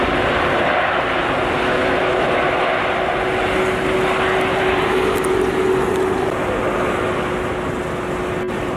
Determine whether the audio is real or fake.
real